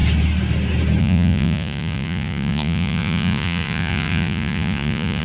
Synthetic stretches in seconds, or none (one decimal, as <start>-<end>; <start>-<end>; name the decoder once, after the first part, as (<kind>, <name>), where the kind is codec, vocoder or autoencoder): 1.0-5.2 (vocoder, Vocos)